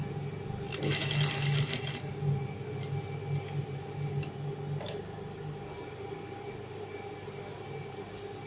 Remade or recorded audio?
recorded